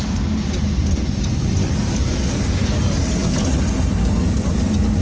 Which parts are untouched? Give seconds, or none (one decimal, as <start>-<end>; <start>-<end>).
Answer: 0.0-1.6; 2.8-5.0